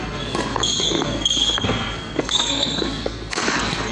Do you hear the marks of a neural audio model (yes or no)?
yes